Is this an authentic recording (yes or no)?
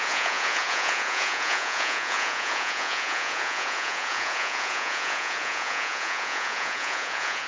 no